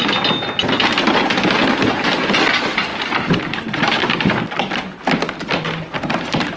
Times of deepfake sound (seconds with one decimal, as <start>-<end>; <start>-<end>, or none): 2.9-3.4

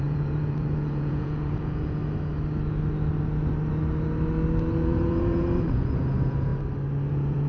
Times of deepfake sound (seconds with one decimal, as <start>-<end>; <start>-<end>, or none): 0.0-2.0; 4.7-6.5; 7.1-7.5

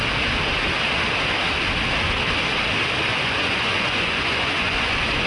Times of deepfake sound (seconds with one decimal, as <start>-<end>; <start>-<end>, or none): 3.1-5.3

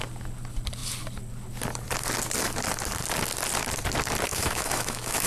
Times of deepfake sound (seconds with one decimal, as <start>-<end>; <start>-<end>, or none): 4.3-5.3

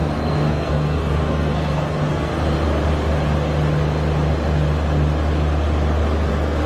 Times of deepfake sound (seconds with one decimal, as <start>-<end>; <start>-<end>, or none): 0.0-2.3; 6.3-6.7

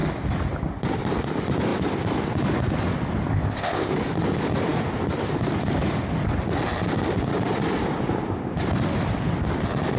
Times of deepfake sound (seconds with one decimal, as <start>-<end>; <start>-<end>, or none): 3.3-3.9

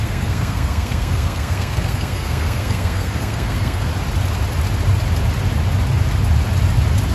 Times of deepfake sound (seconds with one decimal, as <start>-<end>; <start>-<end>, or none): 0.0-3.9